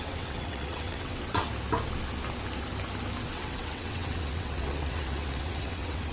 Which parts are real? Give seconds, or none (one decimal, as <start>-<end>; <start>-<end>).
1.5-3.3